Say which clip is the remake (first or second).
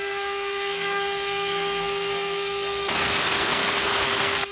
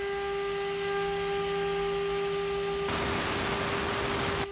first